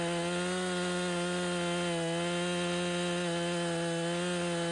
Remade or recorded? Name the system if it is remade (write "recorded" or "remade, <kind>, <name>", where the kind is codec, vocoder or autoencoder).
recorded